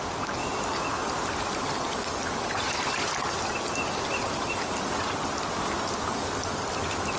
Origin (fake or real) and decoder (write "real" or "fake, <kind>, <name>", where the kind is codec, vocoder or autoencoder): real